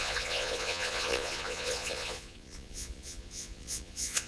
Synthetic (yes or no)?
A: yes